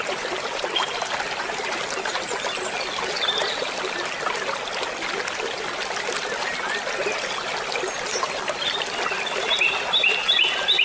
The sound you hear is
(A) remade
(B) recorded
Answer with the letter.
B